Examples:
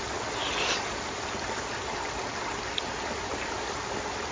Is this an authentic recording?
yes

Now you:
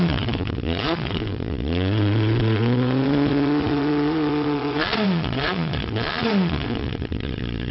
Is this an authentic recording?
no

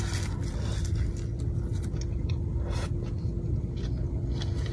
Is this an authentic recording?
yes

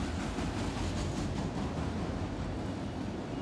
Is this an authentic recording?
yes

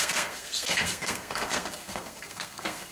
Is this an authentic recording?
no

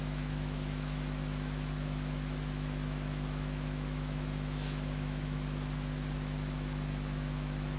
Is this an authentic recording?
no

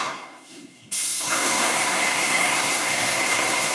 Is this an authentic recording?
no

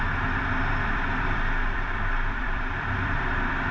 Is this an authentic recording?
no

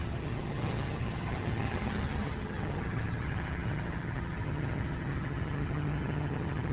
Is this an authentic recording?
no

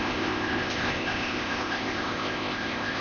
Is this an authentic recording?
no